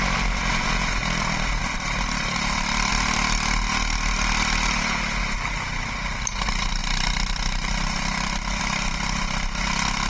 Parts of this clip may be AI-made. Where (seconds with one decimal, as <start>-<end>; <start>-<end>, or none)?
1.6-2.9; 6.8-8.6